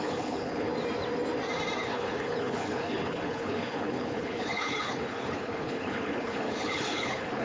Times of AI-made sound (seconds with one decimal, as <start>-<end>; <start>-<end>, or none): 0.0-0.7; 1.8-7.4